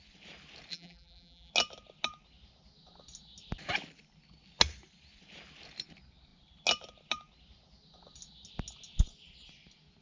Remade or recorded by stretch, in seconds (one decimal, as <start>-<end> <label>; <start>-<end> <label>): 0.0-0.7 recorded; 0.7-1.5 remade; 1.5-10.0 recorded